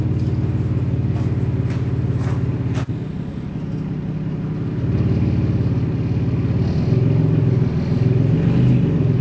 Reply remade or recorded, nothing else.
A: recorded